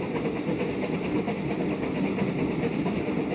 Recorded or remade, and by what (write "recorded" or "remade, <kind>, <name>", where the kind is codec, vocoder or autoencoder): recorded